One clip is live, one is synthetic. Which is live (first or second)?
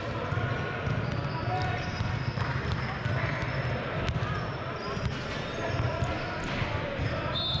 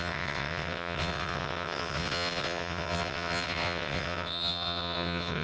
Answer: first